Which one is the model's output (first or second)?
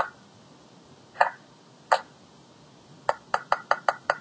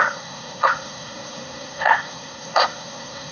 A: second